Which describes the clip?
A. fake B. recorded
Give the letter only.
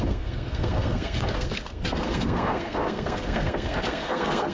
A